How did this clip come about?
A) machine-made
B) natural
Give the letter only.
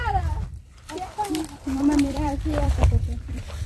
A